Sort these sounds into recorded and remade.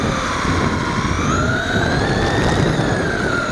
recorded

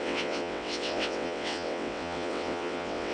remade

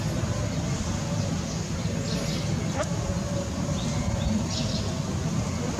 recorded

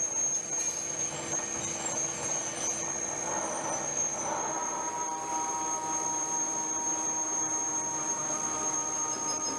recorded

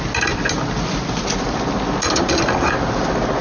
recorded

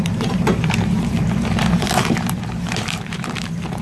remade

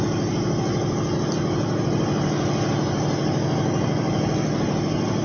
recorded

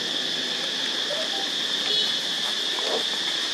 recorded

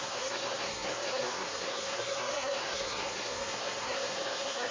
remade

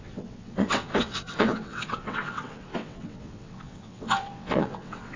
remade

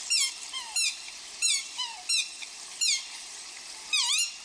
remade